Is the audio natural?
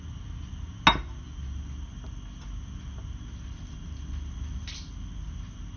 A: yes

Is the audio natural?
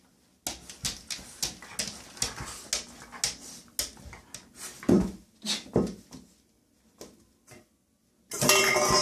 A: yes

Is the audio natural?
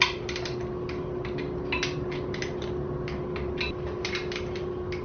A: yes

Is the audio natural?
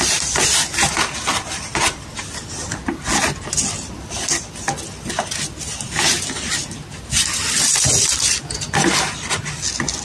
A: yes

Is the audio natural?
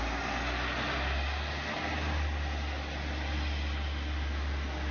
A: yes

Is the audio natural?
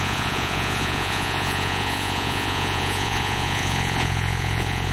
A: no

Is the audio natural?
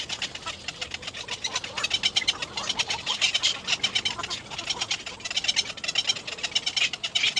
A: yes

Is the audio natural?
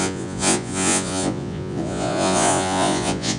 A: no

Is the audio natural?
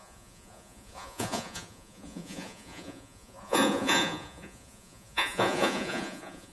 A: no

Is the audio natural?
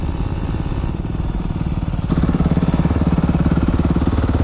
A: yes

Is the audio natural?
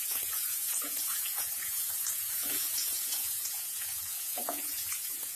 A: no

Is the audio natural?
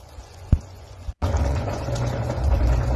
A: no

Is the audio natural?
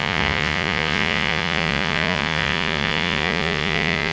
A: no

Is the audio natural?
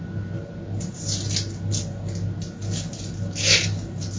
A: yes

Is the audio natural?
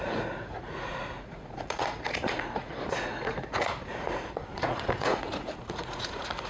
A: no